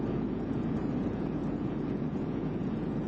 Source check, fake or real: fake